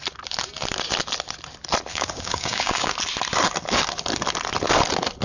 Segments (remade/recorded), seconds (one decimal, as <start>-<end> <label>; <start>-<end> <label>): 0.0-1.9 recorded; 1.9-2.9 remade; 2.9-5.2 recorded